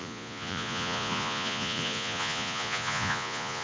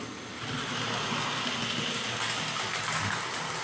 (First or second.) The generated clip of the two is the first